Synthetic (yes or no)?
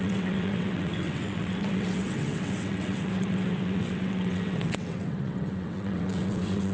yes